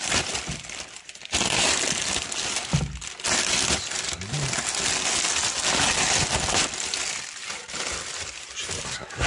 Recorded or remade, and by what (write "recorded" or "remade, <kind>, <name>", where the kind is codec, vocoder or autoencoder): recorded